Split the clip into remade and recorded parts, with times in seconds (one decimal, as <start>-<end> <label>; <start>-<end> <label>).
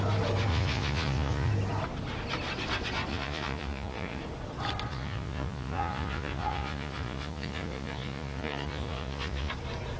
0.0-0.5 recorded; 0.5-1.5 remade; 1.5-3.1 recorded; 3.1-4.2 remade; 4.2-4.9 recorded; 4.9-9.5 remade; 9.5-10.0 recorded